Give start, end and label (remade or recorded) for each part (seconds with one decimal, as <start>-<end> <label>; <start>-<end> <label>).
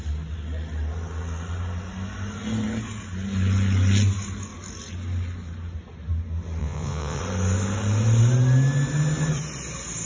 0.0-6.6 recorded; 6.6-7.2 remade; 7.2-10.1 recorded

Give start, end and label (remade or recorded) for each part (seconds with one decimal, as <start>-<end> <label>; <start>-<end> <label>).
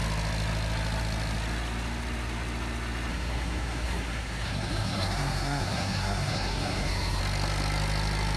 0.0-3.1 recorded; 3.1-7.2 remade; 7.2-8.4 recorded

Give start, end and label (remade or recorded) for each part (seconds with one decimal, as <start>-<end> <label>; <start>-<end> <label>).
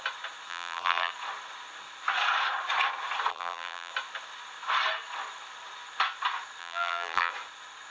0.0-0.5 recorded; 0.5-1.1 remade; 1.1-3.3 recorded; 3.3-3.9 remade; 3.9-6.6 recorded; 6.6-7.3 remade; 7.3-7.9 recorded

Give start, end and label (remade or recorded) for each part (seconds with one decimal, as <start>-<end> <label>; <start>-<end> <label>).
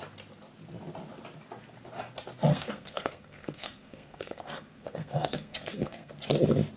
0.0-2.5 recorded; 2.5-6.1 remade; 6.1-6.8 recorded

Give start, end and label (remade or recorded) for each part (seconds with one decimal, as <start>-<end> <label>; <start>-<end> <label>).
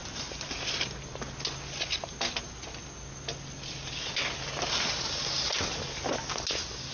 0.0-0.5 remade; 0.5-6.9 recorded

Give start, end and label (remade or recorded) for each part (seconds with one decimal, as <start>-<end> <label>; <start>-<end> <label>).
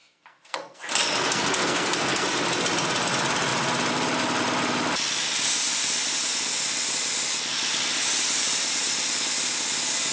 0.0-2.3 remade; 2.3-10.1 recorded